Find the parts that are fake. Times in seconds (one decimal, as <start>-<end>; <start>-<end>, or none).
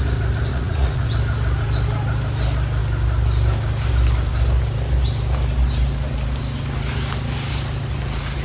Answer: 0.5-1.1